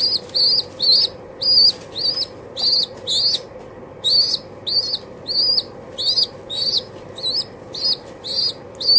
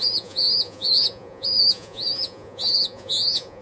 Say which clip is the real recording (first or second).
first